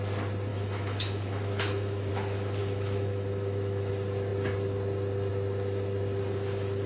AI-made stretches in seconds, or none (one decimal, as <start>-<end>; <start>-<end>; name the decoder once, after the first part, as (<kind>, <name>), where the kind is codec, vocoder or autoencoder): 0.5-2.1 (autoencoder, DAC-VAE); 2.6-3.9